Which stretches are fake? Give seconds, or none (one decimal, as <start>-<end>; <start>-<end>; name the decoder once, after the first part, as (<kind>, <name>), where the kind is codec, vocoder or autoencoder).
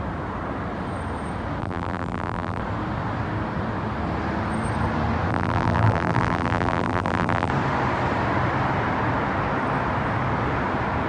1.6-2.6 (vocoder, BigVGAN v2); 5.3-7.5